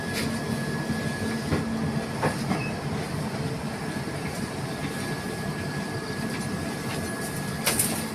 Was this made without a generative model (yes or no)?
yes